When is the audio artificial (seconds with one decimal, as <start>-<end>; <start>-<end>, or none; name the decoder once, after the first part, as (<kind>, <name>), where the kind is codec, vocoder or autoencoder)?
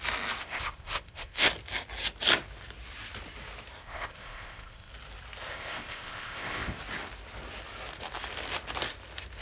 0.4-1.5 (codec, ZipCodec); 3.8-4.9; 5.5-6.8